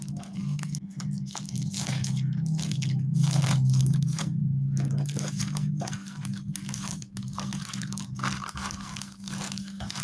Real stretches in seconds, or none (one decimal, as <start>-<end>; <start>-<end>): none